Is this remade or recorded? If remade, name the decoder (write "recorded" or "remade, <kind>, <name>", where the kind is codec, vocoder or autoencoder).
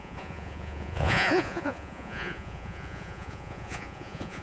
remade, vocoder, Vocos